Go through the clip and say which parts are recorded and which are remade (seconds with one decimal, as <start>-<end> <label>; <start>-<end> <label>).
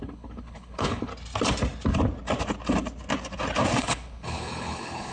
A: 0.0-1.1 remade; 1.1-3.8 recorded; 3.8-5.1 remade